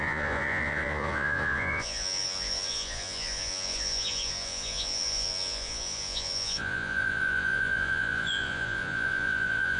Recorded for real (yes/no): no